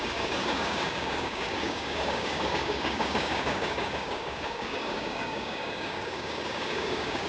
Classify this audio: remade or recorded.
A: remade